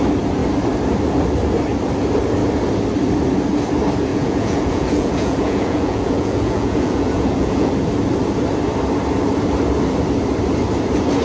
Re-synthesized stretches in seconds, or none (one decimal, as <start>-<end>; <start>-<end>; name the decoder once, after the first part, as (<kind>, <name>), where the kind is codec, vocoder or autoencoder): 4.1-7.7 (vocoder, Vocos)